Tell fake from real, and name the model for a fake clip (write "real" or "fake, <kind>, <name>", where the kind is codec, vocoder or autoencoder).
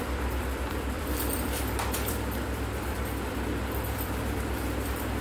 fake, vocoder, BigVGAN v2